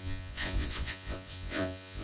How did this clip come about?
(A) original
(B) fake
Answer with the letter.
B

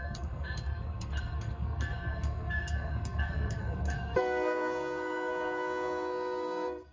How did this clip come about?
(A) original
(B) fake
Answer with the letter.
B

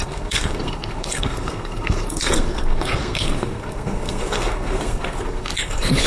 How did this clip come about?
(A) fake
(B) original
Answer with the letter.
A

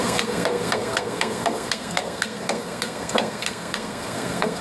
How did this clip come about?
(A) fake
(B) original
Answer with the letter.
A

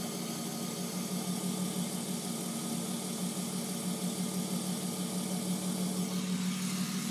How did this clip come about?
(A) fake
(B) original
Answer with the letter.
B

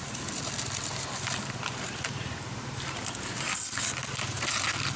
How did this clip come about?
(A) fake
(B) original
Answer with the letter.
B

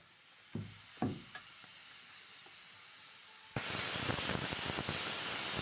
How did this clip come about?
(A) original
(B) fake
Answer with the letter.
A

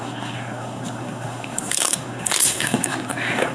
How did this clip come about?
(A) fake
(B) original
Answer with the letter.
A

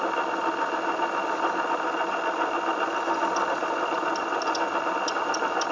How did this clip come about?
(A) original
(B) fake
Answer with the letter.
A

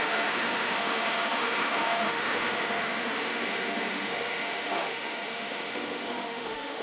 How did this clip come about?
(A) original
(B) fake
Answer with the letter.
B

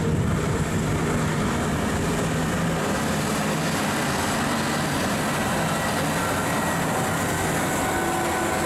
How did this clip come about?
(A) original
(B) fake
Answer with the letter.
A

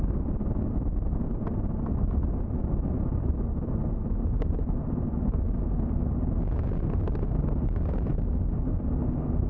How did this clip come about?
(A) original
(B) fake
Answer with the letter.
A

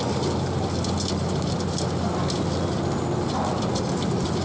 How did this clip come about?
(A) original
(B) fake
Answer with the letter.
A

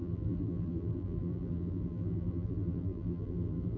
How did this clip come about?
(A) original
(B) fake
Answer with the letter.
B